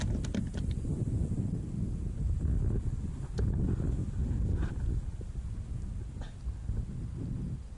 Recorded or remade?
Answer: recorded